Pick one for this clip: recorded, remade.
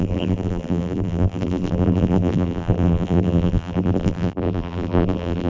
remade